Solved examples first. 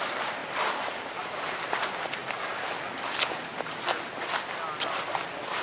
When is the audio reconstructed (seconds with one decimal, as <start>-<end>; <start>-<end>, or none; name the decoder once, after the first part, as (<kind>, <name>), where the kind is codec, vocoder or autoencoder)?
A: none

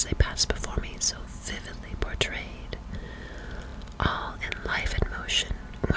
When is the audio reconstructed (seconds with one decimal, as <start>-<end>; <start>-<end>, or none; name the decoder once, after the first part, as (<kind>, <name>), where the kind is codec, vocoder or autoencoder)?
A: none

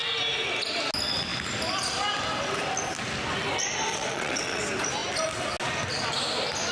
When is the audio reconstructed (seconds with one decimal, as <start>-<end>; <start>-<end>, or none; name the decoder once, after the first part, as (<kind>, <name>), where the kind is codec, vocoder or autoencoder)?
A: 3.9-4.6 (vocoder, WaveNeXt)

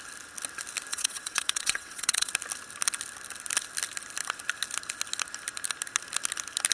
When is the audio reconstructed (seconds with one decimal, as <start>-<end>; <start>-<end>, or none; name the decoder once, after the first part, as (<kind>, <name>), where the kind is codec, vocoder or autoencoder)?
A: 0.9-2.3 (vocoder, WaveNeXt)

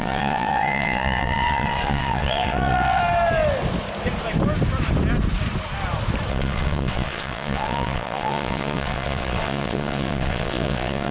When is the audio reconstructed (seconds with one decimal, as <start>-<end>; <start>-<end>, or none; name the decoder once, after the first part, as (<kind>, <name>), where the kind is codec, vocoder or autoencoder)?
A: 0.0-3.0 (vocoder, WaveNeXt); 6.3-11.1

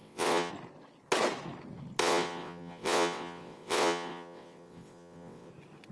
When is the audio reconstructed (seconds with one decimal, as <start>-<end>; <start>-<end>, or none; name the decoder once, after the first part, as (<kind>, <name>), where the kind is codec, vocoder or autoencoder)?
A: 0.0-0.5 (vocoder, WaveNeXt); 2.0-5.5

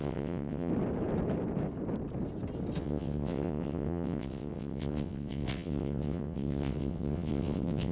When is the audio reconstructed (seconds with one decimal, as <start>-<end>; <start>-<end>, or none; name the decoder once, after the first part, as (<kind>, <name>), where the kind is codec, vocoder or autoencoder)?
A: 0.0-0.7 (vocoder, WaveNeXt); 2.8-7.9